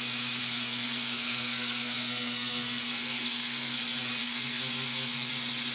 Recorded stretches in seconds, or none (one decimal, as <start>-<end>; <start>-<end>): 0.0-0.4; 3.8-4.2; 5.3-5.7